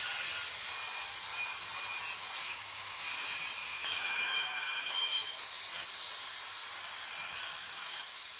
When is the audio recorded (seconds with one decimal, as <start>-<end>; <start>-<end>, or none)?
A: 0.0-2.4; 3.0-3.6; 5.6-7.6

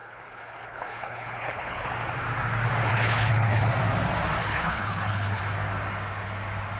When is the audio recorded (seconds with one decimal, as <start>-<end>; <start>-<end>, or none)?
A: 1.9-2.9; 3.7-4.4; 5.4-6.8

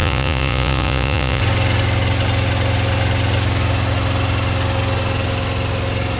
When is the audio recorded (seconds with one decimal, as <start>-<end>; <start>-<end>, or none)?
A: 1.4-6.2

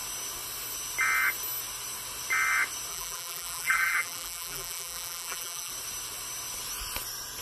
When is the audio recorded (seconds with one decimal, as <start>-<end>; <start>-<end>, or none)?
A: 0.0-2.9; 5.7-7.4